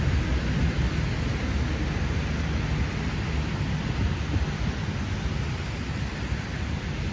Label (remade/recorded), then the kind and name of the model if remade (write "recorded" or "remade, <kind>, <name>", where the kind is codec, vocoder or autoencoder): recorded